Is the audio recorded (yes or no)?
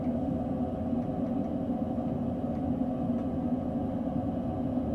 yes